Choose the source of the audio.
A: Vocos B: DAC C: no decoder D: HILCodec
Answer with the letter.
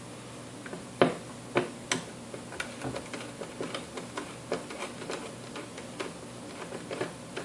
C